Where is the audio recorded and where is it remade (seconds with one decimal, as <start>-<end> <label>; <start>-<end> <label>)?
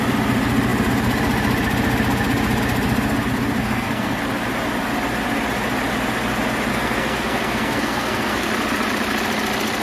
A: 0.0-3.6 recorded; 3.6-4.2 remade; 4.2-6.7 recorded; 6.7-8.5 remade; 8.5-9.8 recorded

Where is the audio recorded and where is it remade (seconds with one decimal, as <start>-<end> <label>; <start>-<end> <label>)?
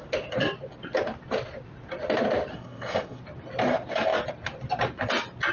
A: 0.0-2.5 recorded; 2.5-3.2 remade; 3.2-5.5 recorded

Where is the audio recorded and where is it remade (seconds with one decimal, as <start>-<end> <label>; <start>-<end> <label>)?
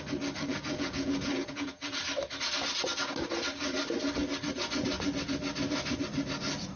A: 0.0-0.5 recorded; 0.5-2.0 remade; 2.0-6.8 recorded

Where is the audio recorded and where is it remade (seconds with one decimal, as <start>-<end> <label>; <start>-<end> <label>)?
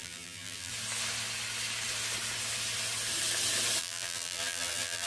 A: 0.0-0.7 remade; 0.7-3.8 recorded; 3.8-5.1 remade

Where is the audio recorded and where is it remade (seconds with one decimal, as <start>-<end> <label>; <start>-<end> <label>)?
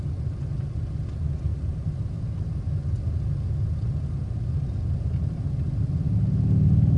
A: 0.0-1.5 recorded; 1.5-2.7 remade; 2.7-7.0 recorded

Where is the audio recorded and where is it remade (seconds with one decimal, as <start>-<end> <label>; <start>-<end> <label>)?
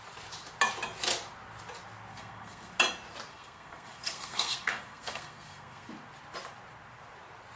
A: 0.0-2.1 recorded; 2.1-2.7 remade; 2.7-3.3 recorded; 3.3-5.9 remade; 5.9-7.6 recorded